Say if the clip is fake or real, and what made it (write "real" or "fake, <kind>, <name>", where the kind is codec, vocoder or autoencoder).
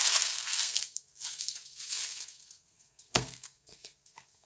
fake, codec, SNAC